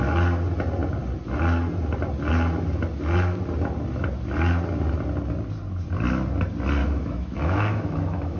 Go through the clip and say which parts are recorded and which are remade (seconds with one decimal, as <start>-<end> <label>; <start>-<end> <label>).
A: 0.0-6.8 recorded; 6.8-8.4 remade